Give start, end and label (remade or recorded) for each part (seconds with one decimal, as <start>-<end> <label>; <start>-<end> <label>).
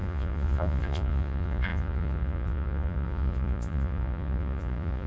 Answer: 0.0-5.1 remade